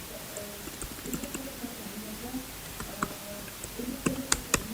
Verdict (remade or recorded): recorded